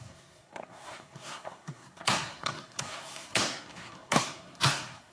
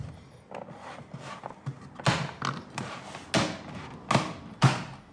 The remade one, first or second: first